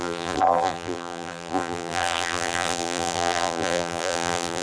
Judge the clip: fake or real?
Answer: fake